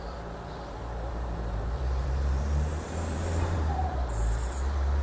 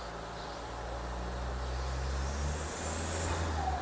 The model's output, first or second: first